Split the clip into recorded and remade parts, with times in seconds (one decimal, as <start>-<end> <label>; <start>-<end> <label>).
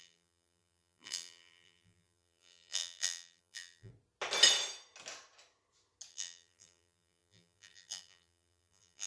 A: 0.0-3.9 remade; 3.9-6.1 recorded; 6.1-9.1 remade